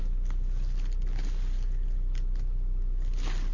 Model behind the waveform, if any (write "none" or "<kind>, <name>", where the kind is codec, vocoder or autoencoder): none